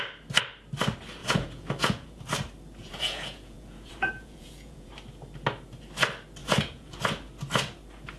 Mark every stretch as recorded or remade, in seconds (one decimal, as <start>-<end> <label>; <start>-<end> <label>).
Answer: 0.0-1.2 recorded; 1.2-2.2 remade; 2.2-2.8 recorded; 2.8-4.9 remade; 4.9-6.4 recorded; 6.4-7.0 remade; 7.0-8.2 recorded